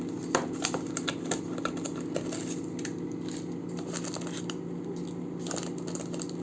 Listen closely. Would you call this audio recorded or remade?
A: recorded